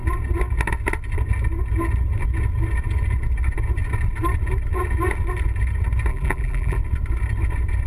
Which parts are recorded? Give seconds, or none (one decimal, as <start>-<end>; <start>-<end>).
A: 0.0-6.1; 6.8-7.9